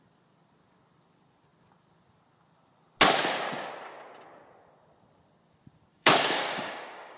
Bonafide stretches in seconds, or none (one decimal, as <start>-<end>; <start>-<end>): 0.0-5.9